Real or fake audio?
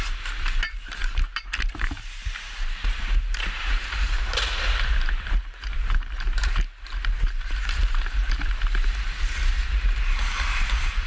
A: fake